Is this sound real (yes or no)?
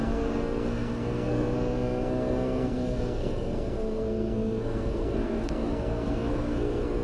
no